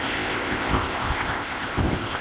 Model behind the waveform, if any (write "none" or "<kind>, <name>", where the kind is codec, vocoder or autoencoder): codec, ZipCodec